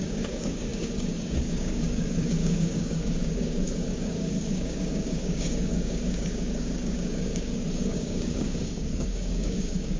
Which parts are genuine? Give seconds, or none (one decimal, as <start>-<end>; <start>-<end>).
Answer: none